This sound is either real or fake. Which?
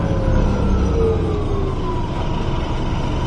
real